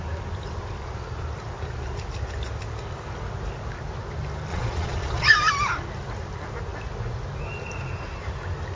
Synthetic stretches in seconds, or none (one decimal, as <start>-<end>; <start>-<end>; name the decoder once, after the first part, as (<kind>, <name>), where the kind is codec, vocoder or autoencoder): 4.5-5.3 (vocoder, Vocos)